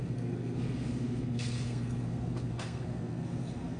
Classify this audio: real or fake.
fake